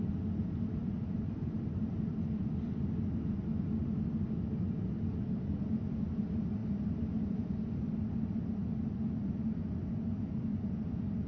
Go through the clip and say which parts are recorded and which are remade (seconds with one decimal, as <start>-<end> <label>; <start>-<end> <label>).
0.0-0.8 recorded; 0.8-2.5 remade; 2.5-11.3 recorded